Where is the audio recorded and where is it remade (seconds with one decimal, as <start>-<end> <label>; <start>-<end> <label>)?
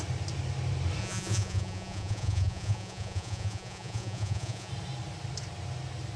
0.0-1.0 recorded; 1.0-4.7 remade; 4.7-6.2 recorded